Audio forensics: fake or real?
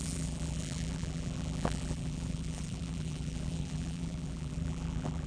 fake